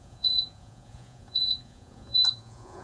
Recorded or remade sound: remade